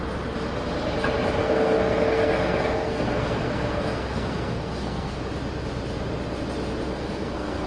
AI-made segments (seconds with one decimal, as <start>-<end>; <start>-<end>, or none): 1.4-5.2; 6.9-7.7